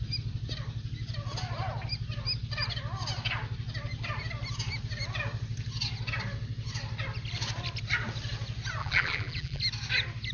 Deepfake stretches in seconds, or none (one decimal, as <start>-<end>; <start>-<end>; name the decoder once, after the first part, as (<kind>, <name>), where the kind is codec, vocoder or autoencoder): 8.8-9.6 (vocoder, BigVGAN v2)